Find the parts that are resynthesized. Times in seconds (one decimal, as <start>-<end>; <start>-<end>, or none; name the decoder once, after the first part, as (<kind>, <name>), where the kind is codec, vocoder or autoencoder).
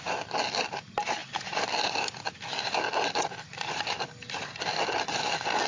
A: 1.2-1.8 (vocoder, BigVGAN v2); 4.2-5.3